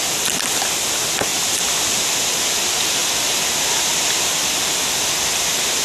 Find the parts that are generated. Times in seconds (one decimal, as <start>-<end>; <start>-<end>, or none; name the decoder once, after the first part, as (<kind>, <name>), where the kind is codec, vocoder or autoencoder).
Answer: none